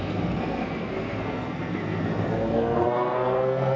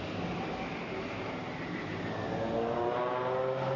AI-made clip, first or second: first